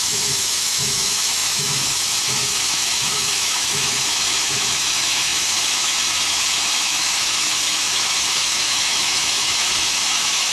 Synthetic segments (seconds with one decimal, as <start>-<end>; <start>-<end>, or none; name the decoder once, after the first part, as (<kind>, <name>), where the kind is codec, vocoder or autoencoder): 0.0-10.5 (autoencoder, DAC-VAE)